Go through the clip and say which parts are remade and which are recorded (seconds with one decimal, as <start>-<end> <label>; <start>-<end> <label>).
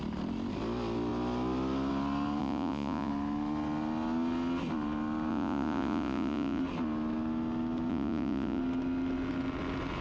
0.0-2.4 recorded; 2.4-3.1 remade; 3.1-5.3 recorded; 5.3-6.6 remade; 6.6-7.9 recorded; 7.9-8.6 remade; 8.6-10.0 recorded